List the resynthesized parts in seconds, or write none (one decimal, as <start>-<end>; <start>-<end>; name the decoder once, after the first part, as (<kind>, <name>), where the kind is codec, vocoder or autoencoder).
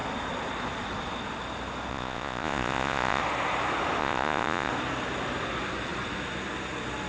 1.9-3.2 (vocoder, Vocos); 4.0-4.7